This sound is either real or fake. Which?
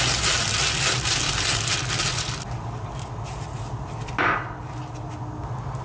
real